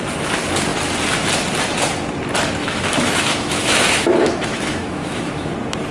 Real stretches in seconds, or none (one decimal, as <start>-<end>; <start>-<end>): 0.0-2.6; 5.5-5.9

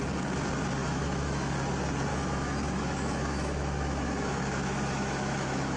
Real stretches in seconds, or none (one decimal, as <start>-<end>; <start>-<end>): 0.0-0.8; 1.5-2.1

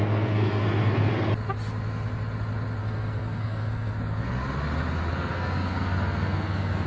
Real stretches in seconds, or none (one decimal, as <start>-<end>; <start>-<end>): 1.1-2.8; 4.3-5.1